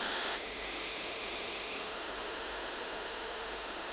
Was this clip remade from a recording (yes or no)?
yes